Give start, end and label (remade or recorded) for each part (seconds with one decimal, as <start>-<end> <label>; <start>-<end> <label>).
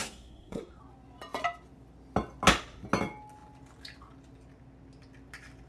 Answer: 0.0-0.8 remade; 0.8-5.7 recorded